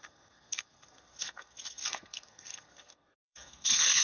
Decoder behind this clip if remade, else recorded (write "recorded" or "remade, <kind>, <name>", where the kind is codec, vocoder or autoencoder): remade, codec, SNAC